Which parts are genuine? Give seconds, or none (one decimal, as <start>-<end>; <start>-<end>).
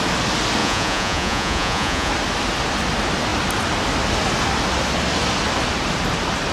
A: 0.0-0.6; 2.1-6.5